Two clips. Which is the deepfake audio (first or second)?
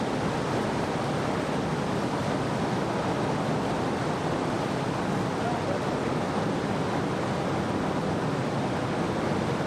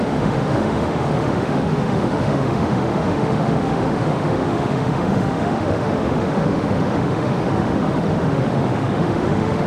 second